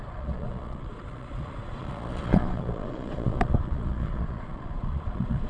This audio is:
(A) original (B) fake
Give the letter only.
B